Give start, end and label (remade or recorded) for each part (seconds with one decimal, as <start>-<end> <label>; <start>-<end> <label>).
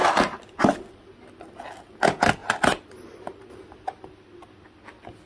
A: 0.0-5.3 recorded